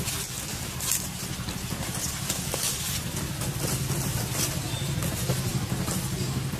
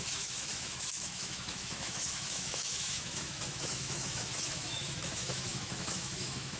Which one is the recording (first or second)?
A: first